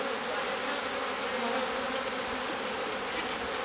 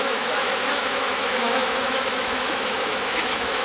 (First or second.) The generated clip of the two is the second